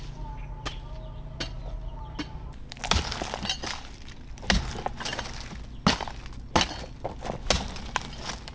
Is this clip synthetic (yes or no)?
no